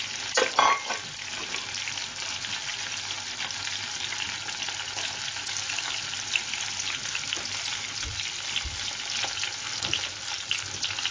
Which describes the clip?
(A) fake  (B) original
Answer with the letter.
B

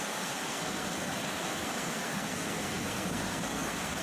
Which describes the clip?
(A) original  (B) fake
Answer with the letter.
B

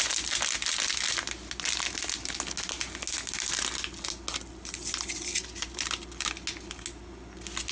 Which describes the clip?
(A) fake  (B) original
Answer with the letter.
B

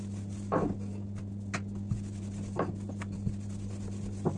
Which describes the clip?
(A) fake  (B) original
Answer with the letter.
B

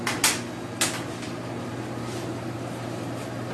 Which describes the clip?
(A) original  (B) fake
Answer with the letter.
A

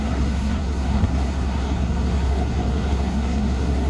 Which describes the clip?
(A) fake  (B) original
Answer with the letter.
A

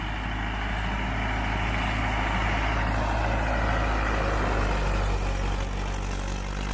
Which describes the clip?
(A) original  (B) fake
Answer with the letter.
A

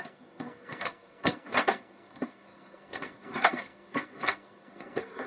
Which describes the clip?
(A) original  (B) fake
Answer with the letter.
B